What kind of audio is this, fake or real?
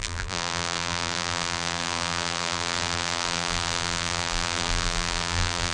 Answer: fake